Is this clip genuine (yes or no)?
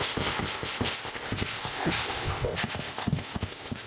no